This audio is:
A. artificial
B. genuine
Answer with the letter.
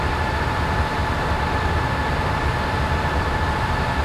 B